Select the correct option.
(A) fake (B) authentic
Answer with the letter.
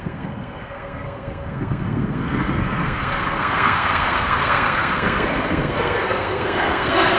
A